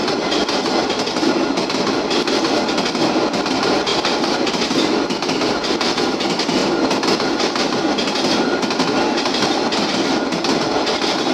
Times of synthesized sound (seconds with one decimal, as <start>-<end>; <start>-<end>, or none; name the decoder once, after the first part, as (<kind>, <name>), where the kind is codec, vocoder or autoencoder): none